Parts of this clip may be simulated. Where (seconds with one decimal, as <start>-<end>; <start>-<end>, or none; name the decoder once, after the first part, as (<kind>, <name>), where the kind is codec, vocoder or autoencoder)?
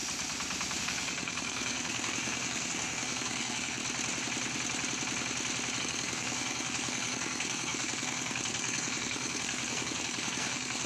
0.8-3.8 (codec, SNAC); 5.8-10.9